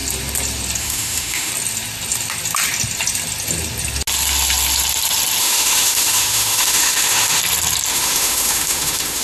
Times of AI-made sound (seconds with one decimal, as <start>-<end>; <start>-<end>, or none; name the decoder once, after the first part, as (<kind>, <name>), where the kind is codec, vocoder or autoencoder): 0.8-1.5 (autoencoder, DAC-VAE); 5.4-7.4; 7.9-9.2